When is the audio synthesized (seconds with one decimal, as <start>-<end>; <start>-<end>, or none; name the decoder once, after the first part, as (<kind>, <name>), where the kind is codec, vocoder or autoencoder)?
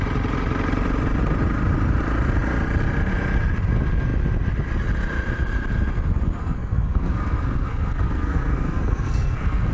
6.4-9.7 (codec, SNAC)